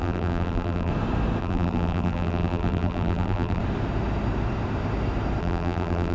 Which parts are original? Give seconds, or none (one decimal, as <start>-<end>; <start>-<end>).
0.9-1.4; 3.6-5.4